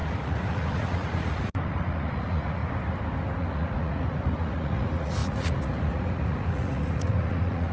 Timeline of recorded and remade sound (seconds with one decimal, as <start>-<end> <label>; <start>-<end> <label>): 0.0-2.6 remade; 2.6-3.4 recorded; 3.4-7.7 remade